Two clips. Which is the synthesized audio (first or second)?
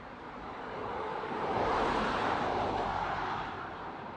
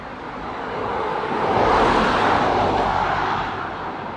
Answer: first